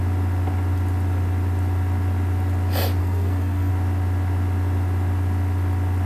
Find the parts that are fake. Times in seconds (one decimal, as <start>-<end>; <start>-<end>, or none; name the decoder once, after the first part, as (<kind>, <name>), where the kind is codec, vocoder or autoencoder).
3.0-3.7 (codec, SNAC)